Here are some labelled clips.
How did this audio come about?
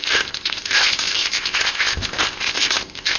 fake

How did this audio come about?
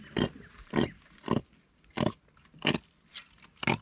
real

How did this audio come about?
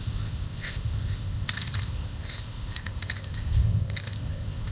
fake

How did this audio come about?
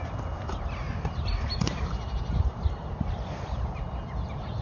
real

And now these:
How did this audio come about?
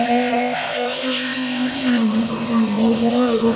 fake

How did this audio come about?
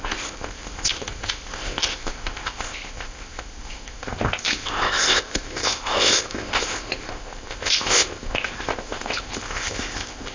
fake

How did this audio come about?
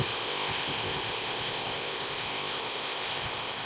fake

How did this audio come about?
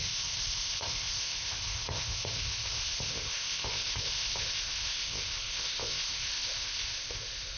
fake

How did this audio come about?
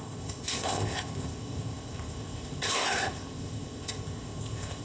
fake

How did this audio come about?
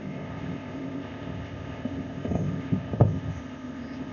fake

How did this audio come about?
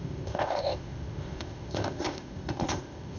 fake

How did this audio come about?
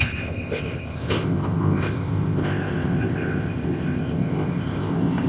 fake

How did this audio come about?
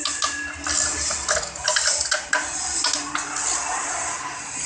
real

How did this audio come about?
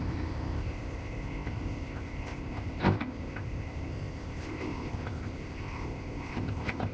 fake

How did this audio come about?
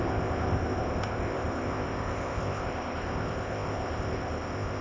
fake